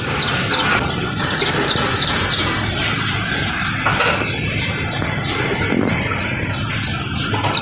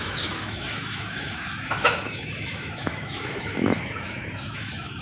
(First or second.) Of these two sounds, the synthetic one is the second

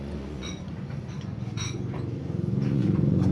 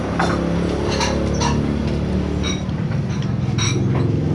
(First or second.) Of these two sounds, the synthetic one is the first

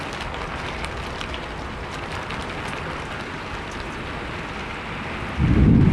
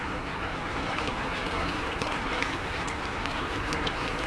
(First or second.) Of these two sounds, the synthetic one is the second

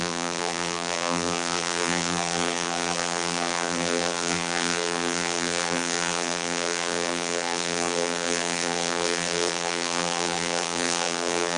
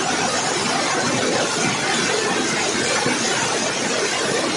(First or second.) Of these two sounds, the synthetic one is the first